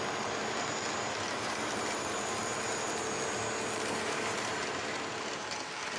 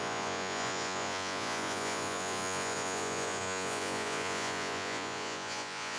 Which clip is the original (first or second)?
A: first